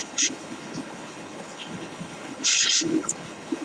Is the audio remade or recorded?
remade